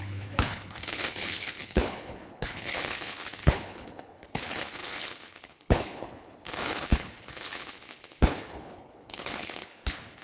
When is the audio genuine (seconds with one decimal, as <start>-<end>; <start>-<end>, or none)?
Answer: none